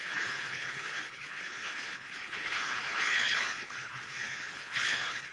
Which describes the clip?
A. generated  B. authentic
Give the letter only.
A